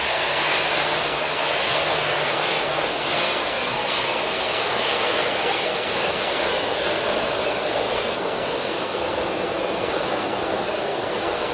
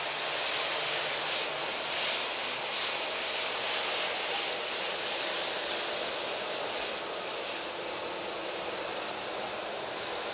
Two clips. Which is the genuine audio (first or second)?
second